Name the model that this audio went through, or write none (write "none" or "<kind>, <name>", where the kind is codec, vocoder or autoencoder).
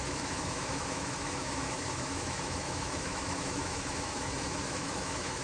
autoencoder, DAC-VAE